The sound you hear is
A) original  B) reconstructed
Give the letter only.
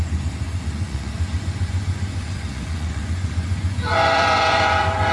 B